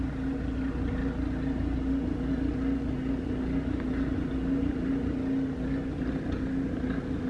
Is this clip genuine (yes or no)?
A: yes